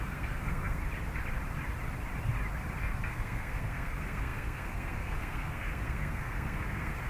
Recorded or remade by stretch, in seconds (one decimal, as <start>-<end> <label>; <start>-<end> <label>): 0.0-0.8 remade; 0.8-2.8 recorded; 2.8-7.1 remade